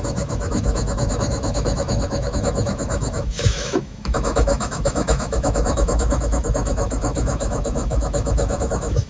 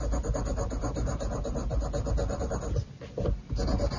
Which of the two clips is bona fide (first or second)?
second